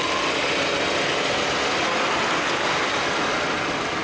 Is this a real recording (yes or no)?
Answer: yes